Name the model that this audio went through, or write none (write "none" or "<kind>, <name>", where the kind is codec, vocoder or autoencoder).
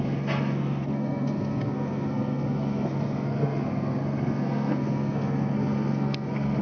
codec, SNAC